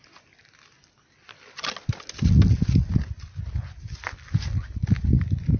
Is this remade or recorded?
recorded